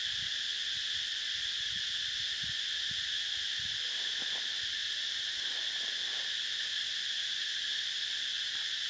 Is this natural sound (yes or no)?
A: yes